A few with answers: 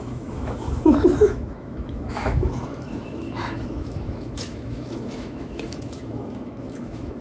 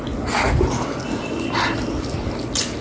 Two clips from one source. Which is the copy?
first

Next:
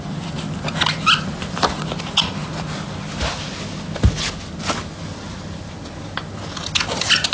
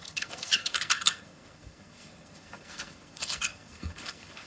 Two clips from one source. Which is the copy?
second